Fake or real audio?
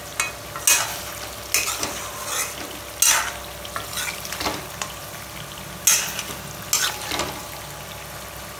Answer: real